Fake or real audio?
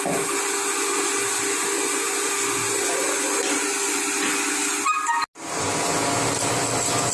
real